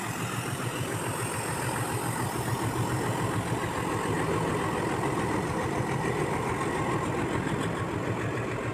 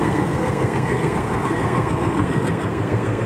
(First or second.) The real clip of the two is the first